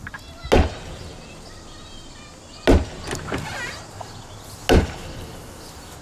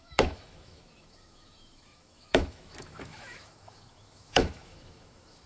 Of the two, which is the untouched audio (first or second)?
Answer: first